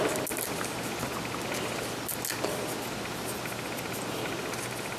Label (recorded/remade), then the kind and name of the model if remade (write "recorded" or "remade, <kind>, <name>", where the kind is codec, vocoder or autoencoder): recorded